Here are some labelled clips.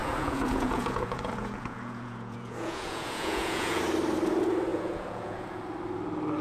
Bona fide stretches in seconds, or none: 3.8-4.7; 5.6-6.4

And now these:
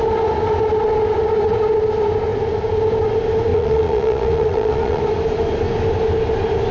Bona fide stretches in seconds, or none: 0.0-3.5; 5.0-6.7

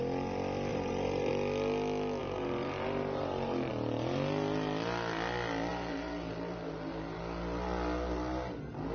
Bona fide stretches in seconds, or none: 0.0-0.7; 1.3-2.2; 3.7-5.7; 7.2-8.9

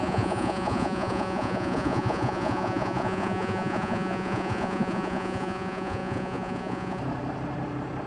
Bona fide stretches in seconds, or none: 7.0-8.1

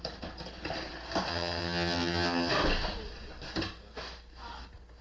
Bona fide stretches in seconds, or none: 0.0-1.3; 2.5-5.0

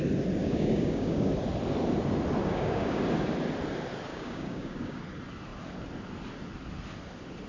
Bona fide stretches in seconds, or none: 0.0-0.4; 1.3-2.4; 3.0-4.1; 5.0-7.5